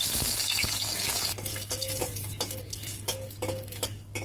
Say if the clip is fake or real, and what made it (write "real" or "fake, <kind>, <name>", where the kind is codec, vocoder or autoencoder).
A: fake, codec, DAC